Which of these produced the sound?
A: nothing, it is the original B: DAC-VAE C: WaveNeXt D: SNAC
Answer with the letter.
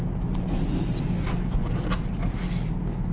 A